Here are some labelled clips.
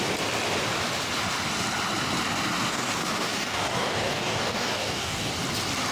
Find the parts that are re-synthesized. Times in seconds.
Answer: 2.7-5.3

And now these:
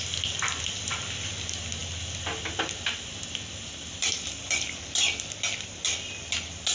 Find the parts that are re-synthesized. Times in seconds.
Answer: none

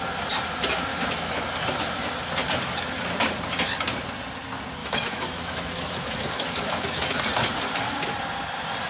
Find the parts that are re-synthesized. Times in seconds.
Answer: 0.9-1.5; 4.8-7.2

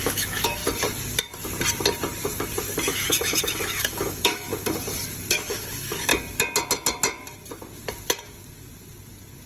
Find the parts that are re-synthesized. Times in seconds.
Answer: 0.0-0.6; 2.6-4.5; 5.3-6.1

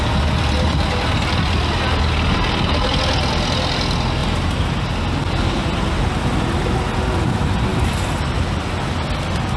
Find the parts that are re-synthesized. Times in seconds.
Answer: none